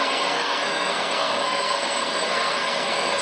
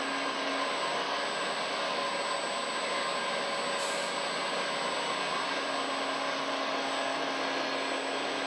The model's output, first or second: first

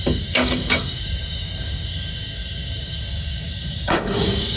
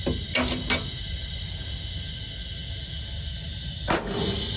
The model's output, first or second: first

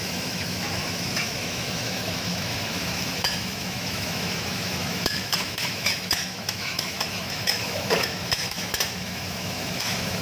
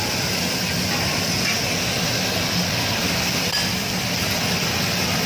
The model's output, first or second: first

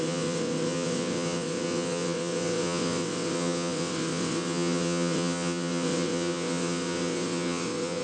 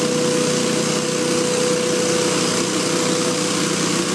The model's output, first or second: first